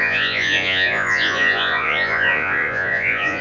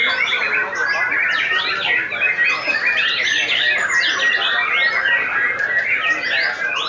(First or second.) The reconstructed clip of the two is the first